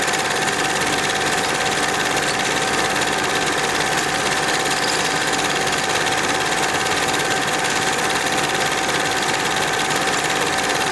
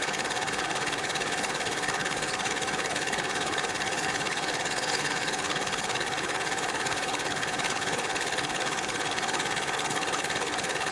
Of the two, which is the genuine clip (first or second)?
first